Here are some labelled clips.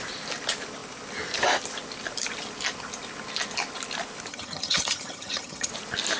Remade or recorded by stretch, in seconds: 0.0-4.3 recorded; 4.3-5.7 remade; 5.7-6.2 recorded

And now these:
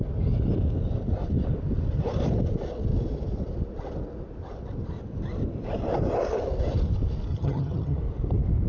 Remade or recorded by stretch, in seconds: 0.0-7.3 recorded; 7.3-8.0 remade; 8.0-8.7 recorded

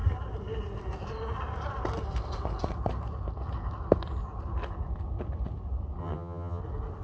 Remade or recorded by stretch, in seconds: 0.0-6.0 recorded; 6.0-6.6 remade; 6.6-7.0 recorded

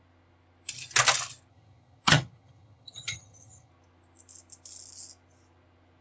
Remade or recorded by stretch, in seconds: 0.0-1.5 recorded; 1.5-3.7 remade; 3.7-6.0 recorded

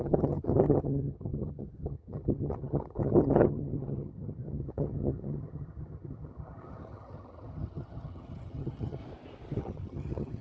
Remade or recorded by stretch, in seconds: 0.0-9.0 remade; 9.0-9.6 recorded; 9.6-10.4 remade

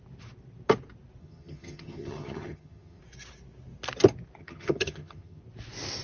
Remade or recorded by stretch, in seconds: 0.0-1.2 recorded; 1.2-3.0 remade; 3.0-4.4 recorded; 4.4-5.4 remade; 5.4-6.0 recorded

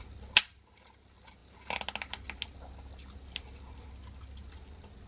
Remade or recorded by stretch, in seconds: 0.0-5.1 recorded

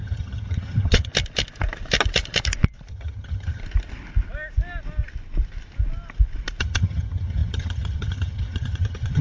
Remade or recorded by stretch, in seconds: 0.0-1.1 remade; 1.1-2.9 recorded; 2.9-3.6 remade; 3.6-6.6 recorded; 6.6-9.2 remade